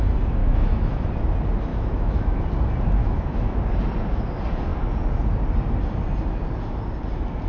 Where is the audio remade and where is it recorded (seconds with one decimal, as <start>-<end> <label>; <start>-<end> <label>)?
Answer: 0.0-0.4 recorded; 0.4-1.1 remade; 1.1-1.7 recorded; 1.7-2.4 remade; 2.4-3.0 recorded; 3.0-3.7 remade; 3.7-7.5 recorded